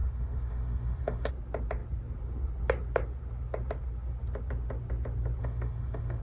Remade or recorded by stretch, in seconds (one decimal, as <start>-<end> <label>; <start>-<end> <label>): 0.0-1.3 remade; 1.3-5.4 recorded; 5.4-6.2 remade